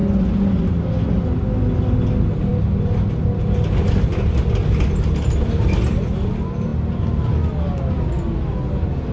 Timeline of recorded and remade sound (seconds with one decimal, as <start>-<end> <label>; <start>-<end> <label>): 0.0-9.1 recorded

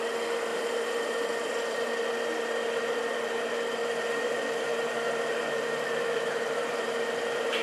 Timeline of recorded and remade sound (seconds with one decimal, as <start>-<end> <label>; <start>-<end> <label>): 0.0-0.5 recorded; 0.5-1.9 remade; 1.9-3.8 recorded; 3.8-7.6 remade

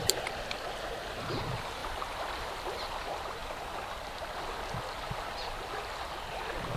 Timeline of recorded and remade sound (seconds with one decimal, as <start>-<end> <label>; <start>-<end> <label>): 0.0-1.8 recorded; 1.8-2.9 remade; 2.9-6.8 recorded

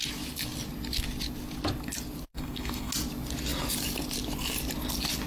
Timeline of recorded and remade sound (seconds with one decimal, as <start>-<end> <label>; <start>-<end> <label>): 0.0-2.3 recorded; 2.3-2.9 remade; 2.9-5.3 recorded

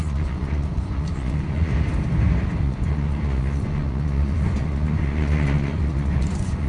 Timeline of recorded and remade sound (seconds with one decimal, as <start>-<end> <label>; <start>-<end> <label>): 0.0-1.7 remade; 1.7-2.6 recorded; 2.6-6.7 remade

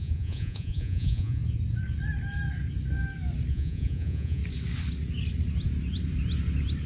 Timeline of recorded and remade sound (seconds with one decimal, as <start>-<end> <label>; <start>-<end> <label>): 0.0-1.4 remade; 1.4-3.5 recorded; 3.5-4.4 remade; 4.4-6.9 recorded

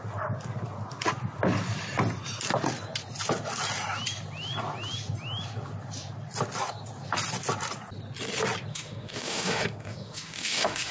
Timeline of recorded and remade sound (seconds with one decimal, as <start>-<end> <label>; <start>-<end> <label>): 0.0-8.7 recorded; 8.7-10.9 remade

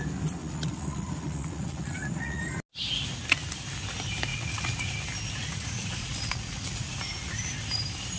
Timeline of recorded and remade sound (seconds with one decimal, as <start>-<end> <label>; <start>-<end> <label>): 0.0-0.4 recorded; 0.4-2.4 remade; 2.4-4.3 recorded; 4.3-4.9 remade; 4.9-5.4 recorded; 5.4-7.5 remade; 7.5-8.2 recorded